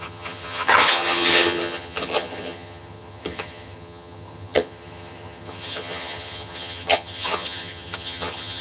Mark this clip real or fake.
fake